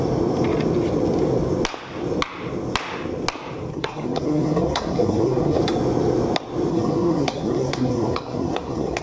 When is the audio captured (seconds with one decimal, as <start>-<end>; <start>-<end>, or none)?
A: 0.0-3.7; 5.6-6.7